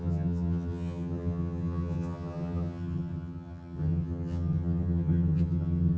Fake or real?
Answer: fake